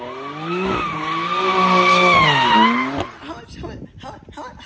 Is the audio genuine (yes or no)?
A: yes